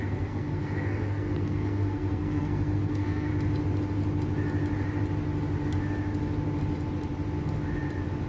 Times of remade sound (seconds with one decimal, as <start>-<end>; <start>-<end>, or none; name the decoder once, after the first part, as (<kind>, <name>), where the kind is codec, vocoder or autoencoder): 0.0-3.3 (codec, SNAC)

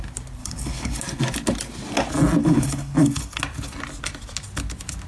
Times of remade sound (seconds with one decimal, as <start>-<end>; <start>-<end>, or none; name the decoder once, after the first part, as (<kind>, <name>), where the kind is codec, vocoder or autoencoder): 0.4-1.0 (codec, HILCodec); 2.4-3.4

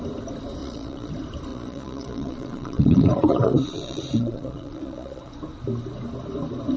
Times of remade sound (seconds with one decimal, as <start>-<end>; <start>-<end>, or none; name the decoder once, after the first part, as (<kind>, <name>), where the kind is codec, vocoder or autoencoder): 0.6-1.1 (vocoder, Vocos); 1.5-5.3

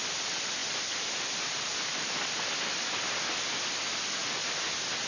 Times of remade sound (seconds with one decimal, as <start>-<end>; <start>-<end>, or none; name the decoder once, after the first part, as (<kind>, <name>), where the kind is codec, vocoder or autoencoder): none

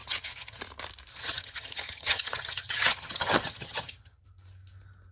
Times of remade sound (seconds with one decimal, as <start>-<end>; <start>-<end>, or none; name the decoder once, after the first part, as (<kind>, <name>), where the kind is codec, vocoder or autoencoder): 0.0-0.6 (vocoder, HiFi-GAN); 1.1-4.2

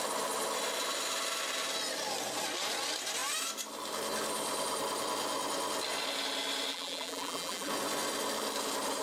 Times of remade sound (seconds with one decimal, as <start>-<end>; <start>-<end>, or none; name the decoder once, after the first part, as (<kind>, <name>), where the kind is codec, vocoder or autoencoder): 6.7-7.7 (vocoder, BigVGAN v2)

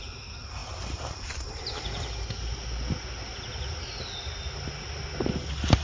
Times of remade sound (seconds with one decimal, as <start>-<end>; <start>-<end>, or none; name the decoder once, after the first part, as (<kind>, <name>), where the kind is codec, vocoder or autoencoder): none

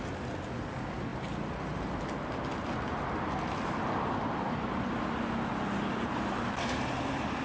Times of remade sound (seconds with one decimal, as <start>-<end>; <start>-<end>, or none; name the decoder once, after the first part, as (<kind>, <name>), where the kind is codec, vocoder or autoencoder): none